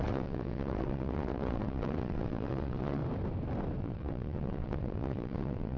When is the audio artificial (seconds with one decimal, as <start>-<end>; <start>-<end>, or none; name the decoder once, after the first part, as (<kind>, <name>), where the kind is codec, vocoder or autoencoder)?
0.0-3.0 (vocoder, WaveNeXt); 3.8-5.8